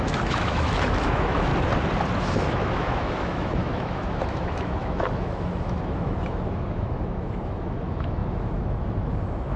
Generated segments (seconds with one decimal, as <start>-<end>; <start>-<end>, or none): 0.0-1.5; 2.2-9.6